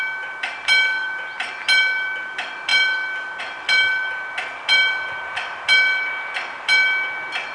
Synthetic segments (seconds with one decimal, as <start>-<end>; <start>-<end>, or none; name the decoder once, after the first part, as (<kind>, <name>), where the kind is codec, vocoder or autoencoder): none